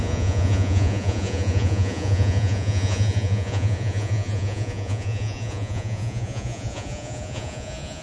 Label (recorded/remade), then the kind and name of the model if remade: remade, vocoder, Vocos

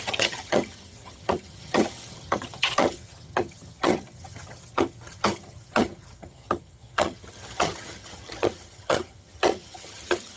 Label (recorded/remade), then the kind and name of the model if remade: remade, vocoder, HiFi-GAN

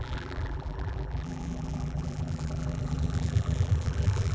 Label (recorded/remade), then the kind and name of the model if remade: remade, vocoder, BigVGAN v2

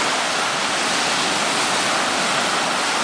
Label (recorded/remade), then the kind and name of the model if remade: recorded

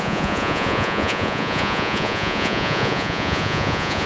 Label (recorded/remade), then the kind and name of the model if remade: remade, vocoder, Vocos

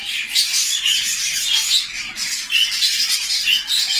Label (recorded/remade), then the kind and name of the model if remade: recorded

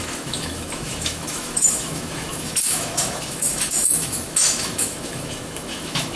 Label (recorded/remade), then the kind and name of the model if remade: remade, autoencoder, DAC-VAE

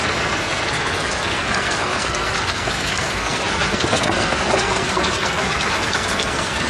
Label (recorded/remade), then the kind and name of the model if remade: remade, codec, SNAC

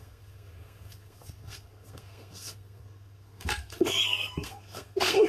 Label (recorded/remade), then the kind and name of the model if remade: remade, codec, SNAC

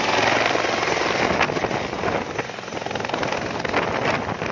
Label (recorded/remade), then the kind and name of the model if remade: recorded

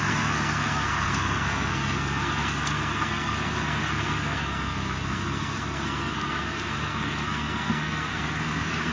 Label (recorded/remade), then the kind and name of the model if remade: remade, codec, SNAC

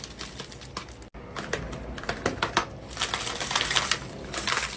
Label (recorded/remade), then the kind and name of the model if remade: recorded